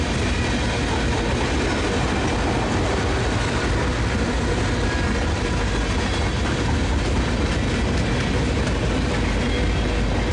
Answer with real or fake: real